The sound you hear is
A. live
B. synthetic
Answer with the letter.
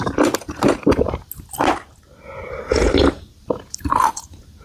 A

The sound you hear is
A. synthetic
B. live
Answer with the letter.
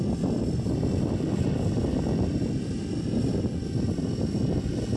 B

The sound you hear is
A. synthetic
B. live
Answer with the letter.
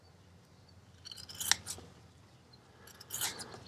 B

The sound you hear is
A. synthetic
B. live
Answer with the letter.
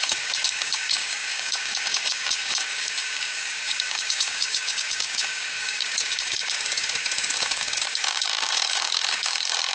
A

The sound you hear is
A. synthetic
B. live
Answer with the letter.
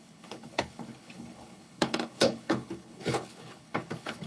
A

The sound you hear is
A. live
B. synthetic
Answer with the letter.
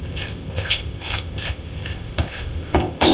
B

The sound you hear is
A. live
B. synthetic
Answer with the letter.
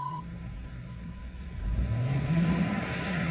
B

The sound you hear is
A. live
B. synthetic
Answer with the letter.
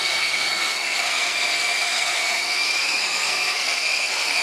B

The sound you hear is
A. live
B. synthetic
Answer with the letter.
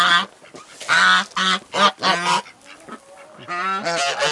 A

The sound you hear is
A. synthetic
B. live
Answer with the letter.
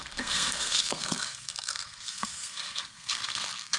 A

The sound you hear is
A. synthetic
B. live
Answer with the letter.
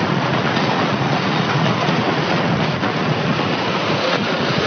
A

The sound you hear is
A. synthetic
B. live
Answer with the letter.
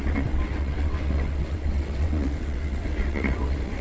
A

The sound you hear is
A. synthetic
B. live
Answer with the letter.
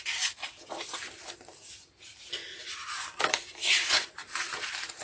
B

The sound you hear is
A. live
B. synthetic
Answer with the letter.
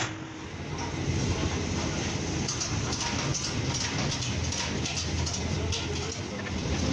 A